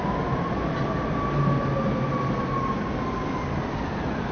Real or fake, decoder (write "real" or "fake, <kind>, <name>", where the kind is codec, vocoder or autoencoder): real